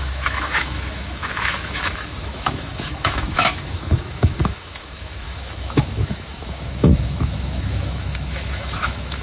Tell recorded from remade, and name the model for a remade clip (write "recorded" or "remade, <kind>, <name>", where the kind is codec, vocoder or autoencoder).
remade, autoencoder, DAC-VAE